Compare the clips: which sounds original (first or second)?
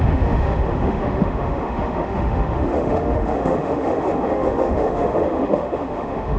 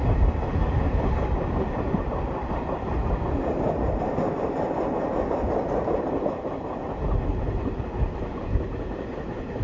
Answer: second